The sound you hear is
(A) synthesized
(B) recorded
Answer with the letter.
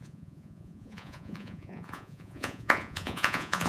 A